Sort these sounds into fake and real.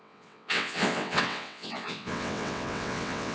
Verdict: fake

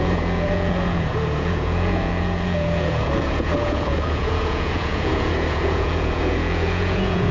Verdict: fake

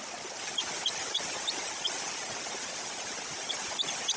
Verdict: real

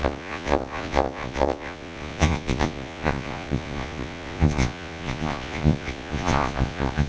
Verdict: fake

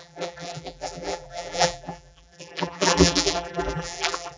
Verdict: fake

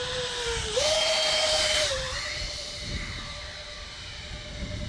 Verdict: fake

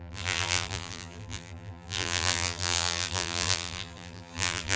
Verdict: fake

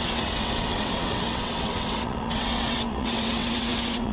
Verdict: fake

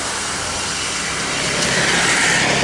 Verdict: real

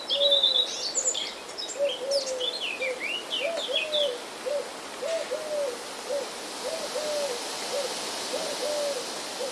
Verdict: real